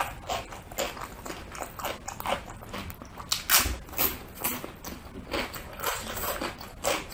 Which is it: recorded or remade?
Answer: recorded